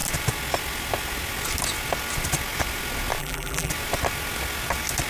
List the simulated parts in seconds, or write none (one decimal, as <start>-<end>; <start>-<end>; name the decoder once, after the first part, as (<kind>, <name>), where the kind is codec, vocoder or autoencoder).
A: 3.2-3.7 (vocoder, BigVGAN v2)